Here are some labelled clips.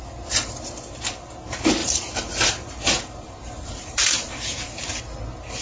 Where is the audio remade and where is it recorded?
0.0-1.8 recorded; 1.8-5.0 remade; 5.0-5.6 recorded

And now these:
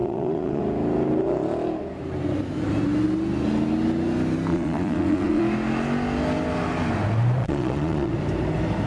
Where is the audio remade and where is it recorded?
0.0-0.6 remade; 0.6-4.5 recorded; 4.5-5.4 remade; 5.4-7.4 recorded; 7.4-8.1 remade; 8.1-8.9 recorded

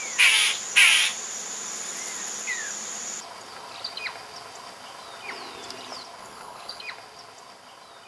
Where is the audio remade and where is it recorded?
0.0-6.2 recorded; 6.2-6.8 remade; 6.8-8.1 recorded

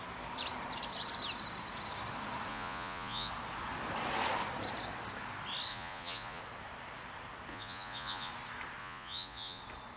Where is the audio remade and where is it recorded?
0.0-2.5 recorded; 2.5-3.3 remade; 3.3-5.7 recorded; 5.7-6.4 remade; 6.4-7.5 recorded; 7.5-8.3 remade; 8.3-8.8 recorded; 8.8-9.6 remade; 9.6-10.0 recorded

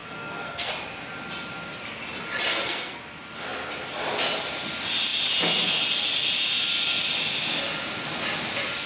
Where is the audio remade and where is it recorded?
0.0-0.7 remade; 0.7-2.5 recorded; 2.5-3.0 remade; 3.0-8.9 recorded